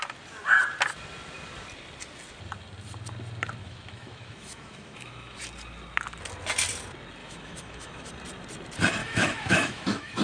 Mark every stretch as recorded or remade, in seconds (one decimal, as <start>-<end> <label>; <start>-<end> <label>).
0.0-3.6 recorded; 3.6-5.4 remade; 5.4-7.2 recorded; 7.2-8.1 remade; 8.1-9.0 recorded; 9.0-10.2 remade